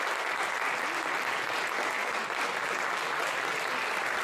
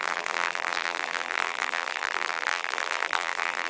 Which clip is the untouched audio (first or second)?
first